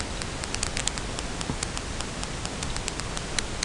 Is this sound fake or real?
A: real